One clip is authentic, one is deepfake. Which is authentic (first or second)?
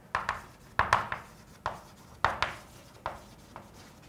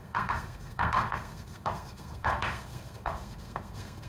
first